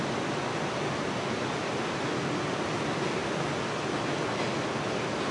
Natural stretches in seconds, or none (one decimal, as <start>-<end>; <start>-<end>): 0.0-5.3